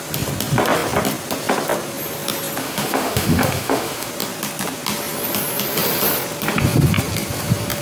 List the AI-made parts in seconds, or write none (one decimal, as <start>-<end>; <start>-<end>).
2.6-4.1

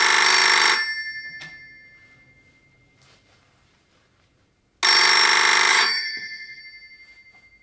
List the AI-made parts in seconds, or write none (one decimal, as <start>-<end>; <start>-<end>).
5.7-6.6

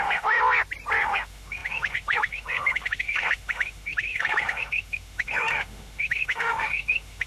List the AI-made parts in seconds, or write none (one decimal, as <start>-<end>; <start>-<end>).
0.0-0.4; 1.0-7.3

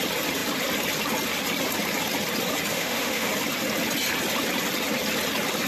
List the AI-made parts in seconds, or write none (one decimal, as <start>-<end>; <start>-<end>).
2.7-3.3

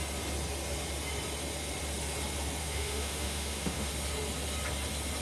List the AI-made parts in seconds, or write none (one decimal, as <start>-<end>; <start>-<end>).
2.6-3.9